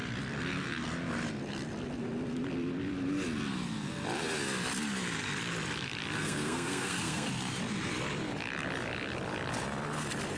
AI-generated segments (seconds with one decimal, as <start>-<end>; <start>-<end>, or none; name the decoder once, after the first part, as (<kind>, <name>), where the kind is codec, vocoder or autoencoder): 6.2-7.3 (codec, SNAC)